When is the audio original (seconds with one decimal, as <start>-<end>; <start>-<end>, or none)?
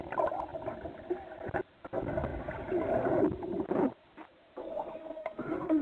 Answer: 0.0-4.6